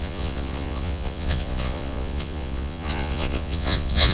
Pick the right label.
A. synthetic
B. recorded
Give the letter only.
A